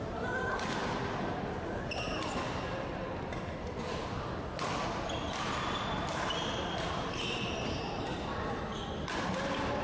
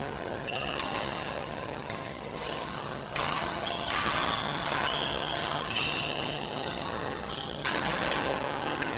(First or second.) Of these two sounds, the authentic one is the first